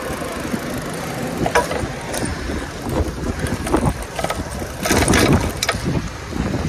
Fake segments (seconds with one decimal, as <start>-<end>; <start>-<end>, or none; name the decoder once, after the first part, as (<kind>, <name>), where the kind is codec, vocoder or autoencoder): none